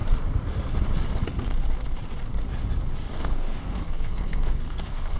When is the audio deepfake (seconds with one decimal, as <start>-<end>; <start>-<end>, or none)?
3.1-5.2